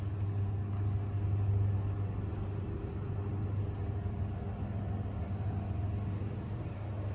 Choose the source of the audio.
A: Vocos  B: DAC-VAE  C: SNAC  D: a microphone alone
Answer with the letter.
D